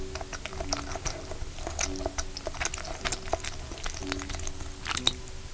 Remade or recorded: recorded